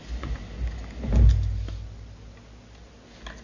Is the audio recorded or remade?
recorded